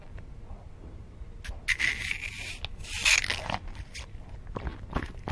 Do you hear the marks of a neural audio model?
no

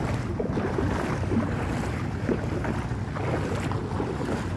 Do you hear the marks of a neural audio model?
no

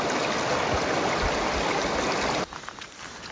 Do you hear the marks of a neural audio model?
no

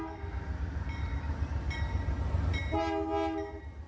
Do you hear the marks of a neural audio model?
no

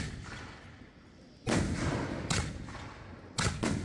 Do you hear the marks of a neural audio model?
no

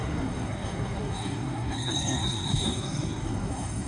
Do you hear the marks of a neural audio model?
yes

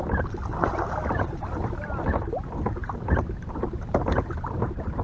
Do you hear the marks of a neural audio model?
no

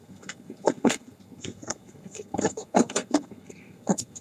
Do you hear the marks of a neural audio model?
yes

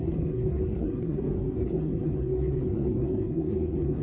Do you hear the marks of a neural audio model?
yes